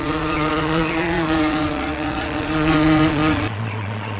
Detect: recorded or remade remade